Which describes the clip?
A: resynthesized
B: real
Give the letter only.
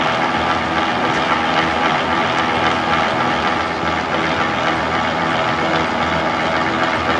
A